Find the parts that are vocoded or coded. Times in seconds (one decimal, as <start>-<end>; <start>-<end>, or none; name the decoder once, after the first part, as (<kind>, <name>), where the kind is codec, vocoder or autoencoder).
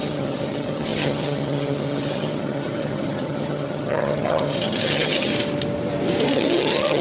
0.0-5.3 (vocoder, HiFi-GAN); 6.3-7.0